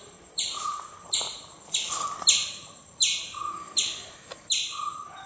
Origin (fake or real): real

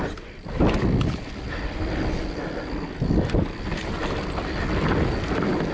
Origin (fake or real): real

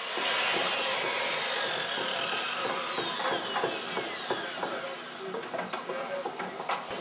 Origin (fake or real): real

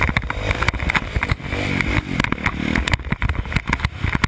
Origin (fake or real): real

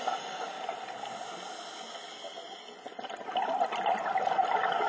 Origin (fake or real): real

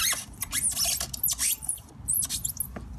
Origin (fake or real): real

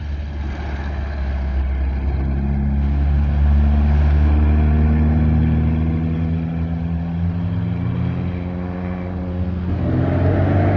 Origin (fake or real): real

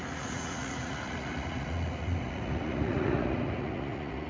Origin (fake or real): fake